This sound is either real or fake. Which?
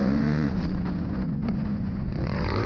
fake